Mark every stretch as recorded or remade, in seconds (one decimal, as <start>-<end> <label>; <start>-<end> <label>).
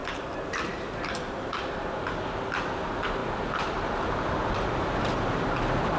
0.0-6.0 recorded